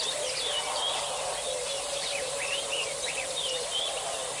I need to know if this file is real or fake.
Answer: fake